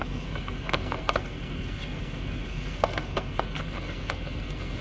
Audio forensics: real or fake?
fake